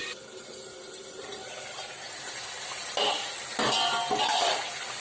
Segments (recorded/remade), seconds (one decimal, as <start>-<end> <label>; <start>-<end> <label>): 0.0-5.0 recorded